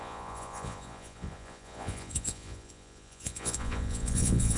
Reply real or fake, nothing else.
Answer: fake